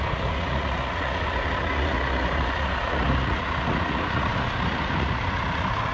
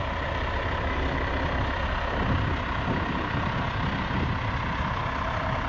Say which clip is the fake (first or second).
first